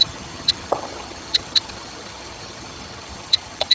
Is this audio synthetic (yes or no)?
yes